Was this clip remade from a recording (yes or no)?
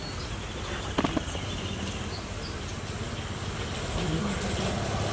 no